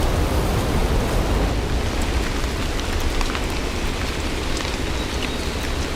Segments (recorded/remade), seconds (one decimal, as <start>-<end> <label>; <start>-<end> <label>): 0.0-6.0 recorded

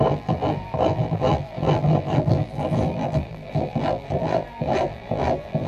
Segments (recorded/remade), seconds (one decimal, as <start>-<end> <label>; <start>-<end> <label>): 0.0-5.7 remade

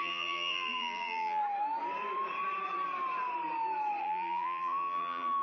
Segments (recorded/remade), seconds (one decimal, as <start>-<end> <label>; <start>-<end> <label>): 0.0-1.4 remade; 1.4-4.0 recorded; 4.0-5.4 remade

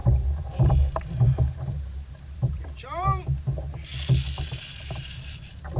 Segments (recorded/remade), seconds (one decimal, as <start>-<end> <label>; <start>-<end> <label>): 0.0-3.9 remade; 3.9-4.8 recorded; 4.8-5.8 remade

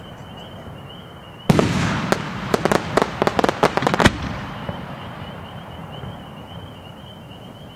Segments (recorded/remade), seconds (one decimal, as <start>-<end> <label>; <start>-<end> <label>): 0.0-7.8 recorded

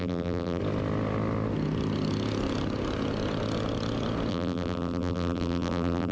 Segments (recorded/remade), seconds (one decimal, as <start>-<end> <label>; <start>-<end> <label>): 0.0-0.6 remade; 0.6-4.3 recorded; 4.3-6.1 remade

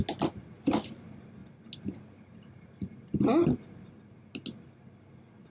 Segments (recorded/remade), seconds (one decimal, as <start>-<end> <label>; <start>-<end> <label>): 0.0-5.5 recorded

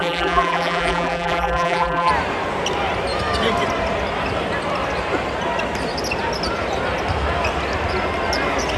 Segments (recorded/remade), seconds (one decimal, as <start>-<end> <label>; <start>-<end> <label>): 0.0-2.1 remade; 2.1-8.8 recorded